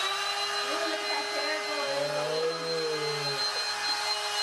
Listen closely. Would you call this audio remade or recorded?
recorded